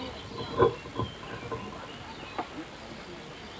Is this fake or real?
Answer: real